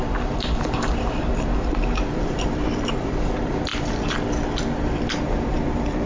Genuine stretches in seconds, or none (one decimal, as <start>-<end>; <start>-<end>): 3.7-5.2

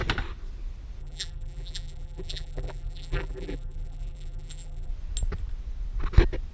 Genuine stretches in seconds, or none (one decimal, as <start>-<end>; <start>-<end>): 0.0-1.0; 4.9-6.5

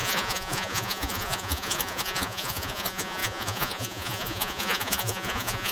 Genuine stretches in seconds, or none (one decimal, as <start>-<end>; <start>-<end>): none

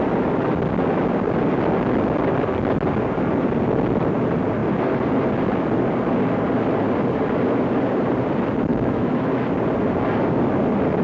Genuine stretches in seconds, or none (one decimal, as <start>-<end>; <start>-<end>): 0.0-8.7; 9.3-11.0

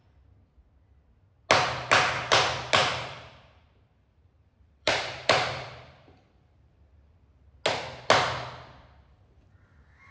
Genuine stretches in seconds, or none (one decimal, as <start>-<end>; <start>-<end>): 0.0-2.8; 7.2-10.1

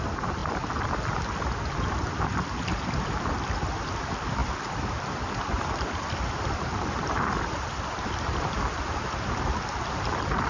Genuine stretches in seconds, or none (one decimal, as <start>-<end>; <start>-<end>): none